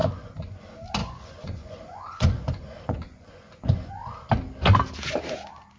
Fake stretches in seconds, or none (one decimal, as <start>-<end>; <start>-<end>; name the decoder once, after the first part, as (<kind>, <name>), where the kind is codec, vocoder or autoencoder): 0.0-0.6 (vocoder, Vocos); 1.0-3.9